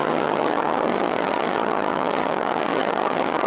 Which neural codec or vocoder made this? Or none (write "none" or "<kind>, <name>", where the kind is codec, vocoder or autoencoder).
vocoder, HiFi-GAN